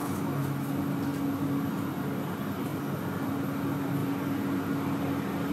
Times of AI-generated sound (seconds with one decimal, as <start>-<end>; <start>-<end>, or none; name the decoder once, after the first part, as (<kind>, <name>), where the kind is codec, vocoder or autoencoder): 0.0-0.7 (autoencoder, DAC-VAE)